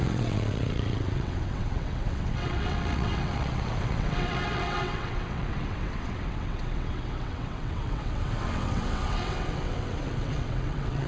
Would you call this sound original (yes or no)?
no